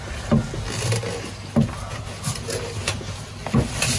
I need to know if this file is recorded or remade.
recorded